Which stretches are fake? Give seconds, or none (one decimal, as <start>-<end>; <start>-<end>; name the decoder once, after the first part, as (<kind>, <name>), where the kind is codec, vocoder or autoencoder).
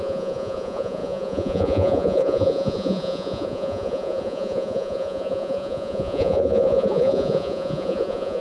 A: 0.0-8.4 (vocoder, Vocos)